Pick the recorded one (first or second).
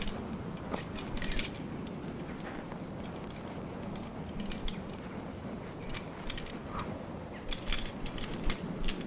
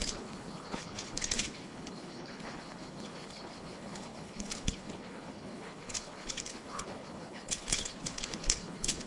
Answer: first